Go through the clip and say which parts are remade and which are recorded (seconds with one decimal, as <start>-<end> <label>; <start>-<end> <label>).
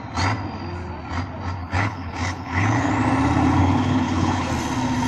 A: 0.0-1.6 recorded; 1.6-2.9 remade; 2.9-3.6 recorded; 3.6-4.5 remade; 4.5-5.1 recorded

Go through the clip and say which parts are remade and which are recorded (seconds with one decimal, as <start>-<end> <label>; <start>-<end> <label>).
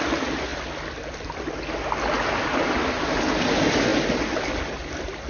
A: 0.0-5.3 recorded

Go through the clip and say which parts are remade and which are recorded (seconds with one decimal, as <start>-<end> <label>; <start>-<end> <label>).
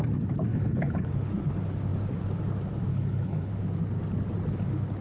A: 0.0-0.5 recorded; 0.5-1.1 remade; 1.1-2.9 recorded; 2.9-3.5 remade; 3.5-5.0 recorded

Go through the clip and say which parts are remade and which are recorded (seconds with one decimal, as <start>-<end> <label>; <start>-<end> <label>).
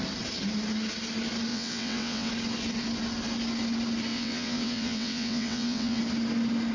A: 0.0-1.5 recorded; 1.5-2.3 remade; 2.3-4.1 recorded; 4.1-6.0 remade; 6.0-6.7 recorded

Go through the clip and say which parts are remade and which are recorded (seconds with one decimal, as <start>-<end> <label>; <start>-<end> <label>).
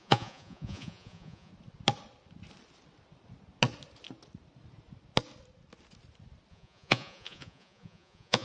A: 0.0-1.5 remade; 1.5-6.5 recorded; 6.5-8.4 remade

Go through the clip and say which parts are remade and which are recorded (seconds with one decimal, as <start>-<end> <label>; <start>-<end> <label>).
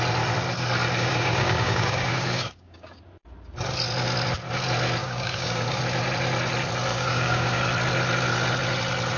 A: 0.0-1.0 recorded; 1.0-3.0 remade; 3.0-5.0 recorded; 5.0-5.8 remade; 5.8-6.9 recorded; 6.9-7.6 remade; 7.6-9.2 recorded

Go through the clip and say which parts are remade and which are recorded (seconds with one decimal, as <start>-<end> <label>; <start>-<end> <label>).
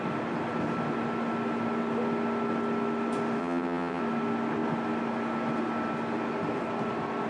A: 0.0-3.4 recorded; 3.4-4.0 remade; 4.0-7.3 recorded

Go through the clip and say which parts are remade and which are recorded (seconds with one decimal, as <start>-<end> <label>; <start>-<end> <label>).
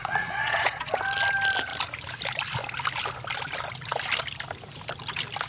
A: 0.0-0.9 remade; 0.9-5.5 recorded